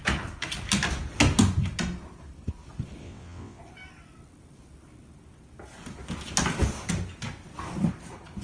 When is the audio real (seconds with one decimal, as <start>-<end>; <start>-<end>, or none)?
0.0-3.0; 3.6-8.4